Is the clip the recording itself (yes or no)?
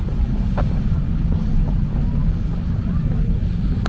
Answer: yes